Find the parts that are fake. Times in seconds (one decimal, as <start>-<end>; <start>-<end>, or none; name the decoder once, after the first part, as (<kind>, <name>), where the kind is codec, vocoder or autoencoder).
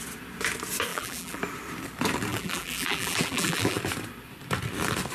0.9-1.4 (vocoder, BigVGAN v2); 2.3-3.8